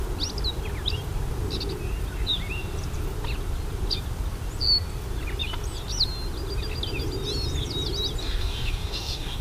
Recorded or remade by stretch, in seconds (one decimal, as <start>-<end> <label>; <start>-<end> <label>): 0.0-8.2 recorded; 8.2-9.4 remade